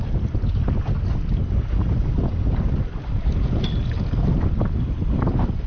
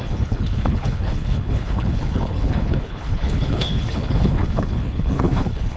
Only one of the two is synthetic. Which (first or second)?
second